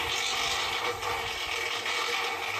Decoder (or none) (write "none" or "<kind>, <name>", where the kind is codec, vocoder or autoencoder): none